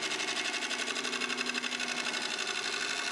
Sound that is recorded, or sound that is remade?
recorded